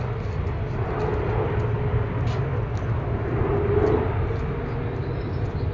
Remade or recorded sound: recorded